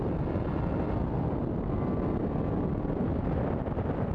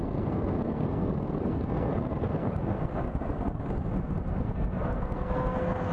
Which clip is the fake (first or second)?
second